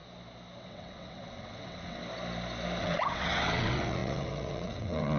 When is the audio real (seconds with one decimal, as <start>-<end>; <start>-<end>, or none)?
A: 0.0-0.6; 2.0-2.8